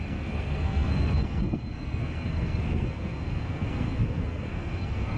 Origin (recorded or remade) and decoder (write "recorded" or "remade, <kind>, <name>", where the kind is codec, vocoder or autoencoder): remade, codec, SNAC